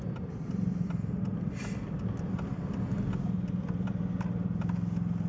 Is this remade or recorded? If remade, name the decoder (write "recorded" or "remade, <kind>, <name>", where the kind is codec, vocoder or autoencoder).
recorded